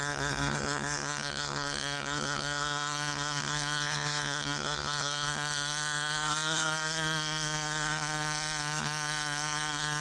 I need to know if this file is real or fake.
fake